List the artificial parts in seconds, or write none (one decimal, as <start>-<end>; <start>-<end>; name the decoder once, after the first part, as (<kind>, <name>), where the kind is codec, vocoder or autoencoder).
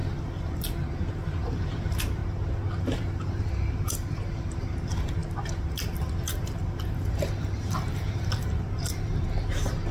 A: 1.1-2.2 (vocoder, BigVGAN v2); 2.8-9.9